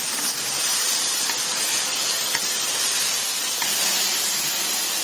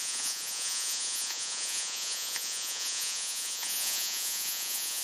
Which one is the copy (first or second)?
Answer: second